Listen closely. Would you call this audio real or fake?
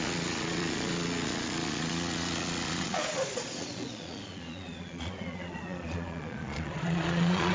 fake